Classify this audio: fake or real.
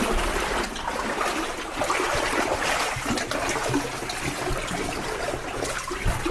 real